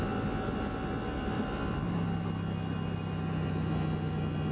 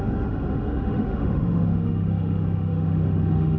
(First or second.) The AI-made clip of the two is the second